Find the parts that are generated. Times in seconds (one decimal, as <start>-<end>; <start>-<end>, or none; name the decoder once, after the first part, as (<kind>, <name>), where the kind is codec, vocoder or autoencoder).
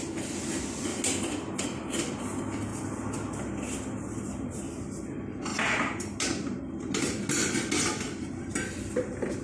none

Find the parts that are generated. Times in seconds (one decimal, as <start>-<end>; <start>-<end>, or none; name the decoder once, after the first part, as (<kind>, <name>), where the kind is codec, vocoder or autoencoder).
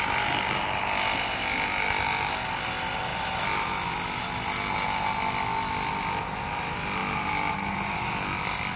none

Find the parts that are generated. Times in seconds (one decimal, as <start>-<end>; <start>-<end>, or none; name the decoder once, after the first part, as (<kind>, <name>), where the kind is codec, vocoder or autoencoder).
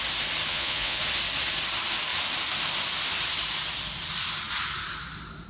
0.5-1.0 (vocoder, Vocos)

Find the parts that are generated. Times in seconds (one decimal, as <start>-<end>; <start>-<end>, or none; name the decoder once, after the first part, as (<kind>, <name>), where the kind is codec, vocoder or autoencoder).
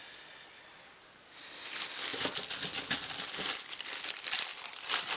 2.1-3.4 (vocoder, BigVGAN v2); 4.5-5.2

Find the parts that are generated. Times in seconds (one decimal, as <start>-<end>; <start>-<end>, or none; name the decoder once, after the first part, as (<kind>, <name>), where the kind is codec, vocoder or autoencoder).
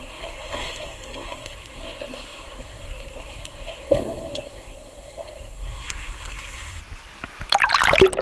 0.0-6.8 (codec, SNAC)